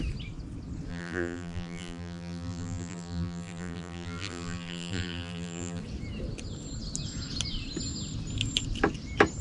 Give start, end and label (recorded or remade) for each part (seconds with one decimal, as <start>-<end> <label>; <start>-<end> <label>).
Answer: 0.0-0.9 recorded; 0.9-5.8 remade; 5.8-9.4 recorded